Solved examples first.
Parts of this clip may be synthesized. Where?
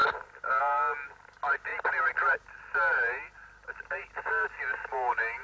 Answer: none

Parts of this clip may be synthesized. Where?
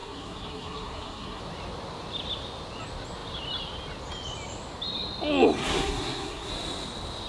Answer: 0.0-1.4; 5.6-6.5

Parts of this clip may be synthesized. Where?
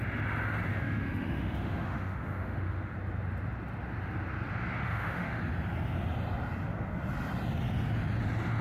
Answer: 0.7-2.9; 4.8-5.4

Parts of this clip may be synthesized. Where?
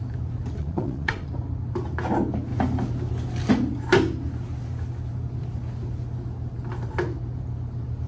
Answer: 0.6-1.3